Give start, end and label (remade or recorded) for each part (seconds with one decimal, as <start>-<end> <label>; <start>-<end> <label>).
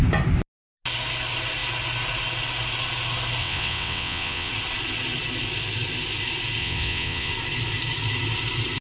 0.0-3.4 recorded; 3.4-4.5 remade; 4.5-6.6 recorded; 6.6-7.3 remade; 7.3-8.8 recorded